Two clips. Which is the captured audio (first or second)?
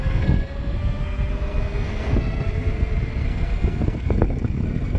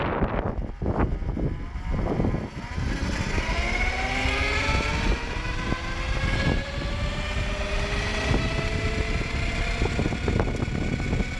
second